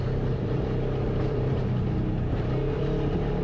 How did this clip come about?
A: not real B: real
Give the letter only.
A